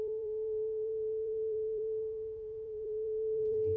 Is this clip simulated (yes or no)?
yes